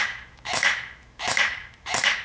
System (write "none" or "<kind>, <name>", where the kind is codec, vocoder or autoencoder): autoencoder, DAC-VAE